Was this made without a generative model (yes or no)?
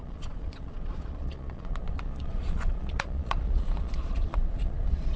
no